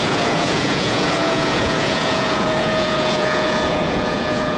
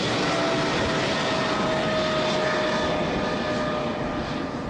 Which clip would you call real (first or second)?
second